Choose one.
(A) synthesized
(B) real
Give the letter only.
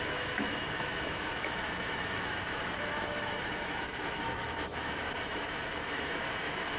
A